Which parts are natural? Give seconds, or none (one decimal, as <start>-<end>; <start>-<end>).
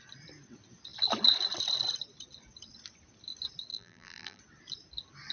0.0-3.7; 4.4-5.3